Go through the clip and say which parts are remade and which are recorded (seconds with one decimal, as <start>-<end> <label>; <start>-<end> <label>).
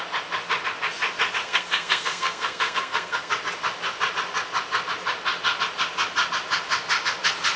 0.0-1.4 recorded; 1.4-3.3 remade; 3.3-7.6 recorded